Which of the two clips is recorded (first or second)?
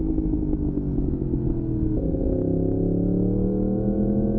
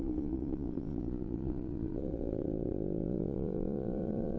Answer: first